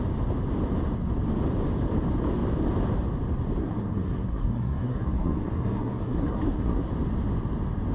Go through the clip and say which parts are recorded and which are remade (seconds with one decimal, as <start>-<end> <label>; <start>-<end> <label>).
0.0-3.6 recorded; 3.6-6.9 remade; 6.9-7.9 recorded